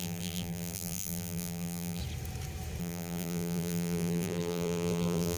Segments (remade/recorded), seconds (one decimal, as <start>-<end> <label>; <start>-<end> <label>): 0.0-2.0 remade; 2.0-2.8 recorded; 2.8-5.4 remade